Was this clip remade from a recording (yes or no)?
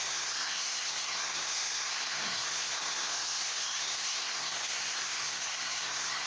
yes